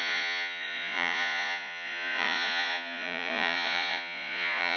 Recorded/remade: remade